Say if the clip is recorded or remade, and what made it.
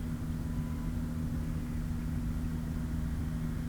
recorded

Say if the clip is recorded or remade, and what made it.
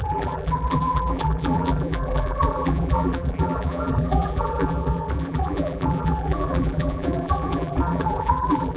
remade, vocoder, BigVGAN v2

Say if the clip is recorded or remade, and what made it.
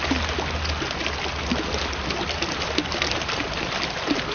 recorded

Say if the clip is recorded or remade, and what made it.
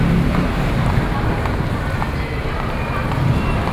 recorded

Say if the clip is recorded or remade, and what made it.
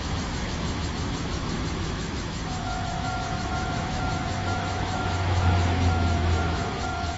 remade, autoencoder, DAC-VAE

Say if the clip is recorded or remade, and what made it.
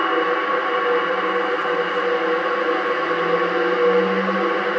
recorded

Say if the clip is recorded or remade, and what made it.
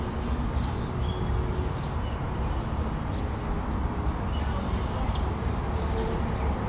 recorded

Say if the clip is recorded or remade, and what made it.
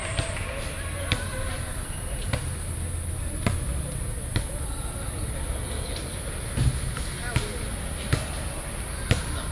recorded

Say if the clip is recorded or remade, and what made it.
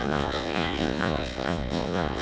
remade, vocoder, Vocos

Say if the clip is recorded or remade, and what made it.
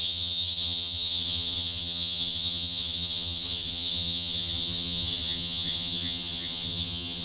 remade, vocoder, HiFi-GAN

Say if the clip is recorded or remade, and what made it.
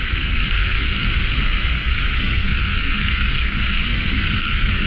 remade, codec, SNAC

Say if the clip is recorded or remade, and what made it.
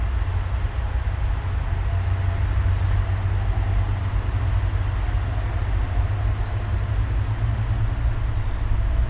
recorded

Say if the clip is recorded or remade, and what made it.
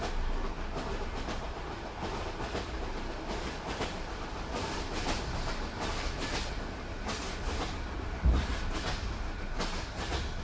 recorded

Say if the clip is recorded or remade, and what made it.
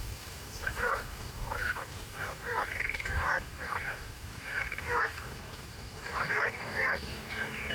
remade, codec, DAC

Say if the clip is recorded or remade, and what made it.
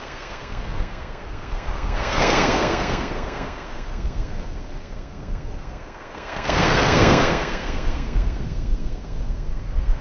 remade, codec, SNAC